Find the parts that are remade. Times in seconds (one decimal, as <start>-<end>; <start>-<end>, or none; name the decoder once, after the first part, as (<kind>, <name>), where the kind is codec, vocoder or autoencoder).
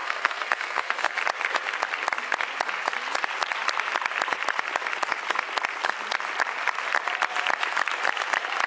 0.0-1.2 (codec, SNAC)